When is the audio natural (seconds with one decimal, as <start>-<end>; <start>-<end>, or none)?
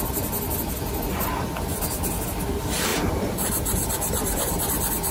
0.0-2.9; 4.5-5.1